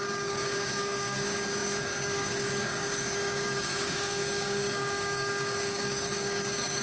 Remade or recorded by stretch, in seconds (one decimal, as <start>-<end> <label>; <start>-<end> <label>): 0.0-6.8 remade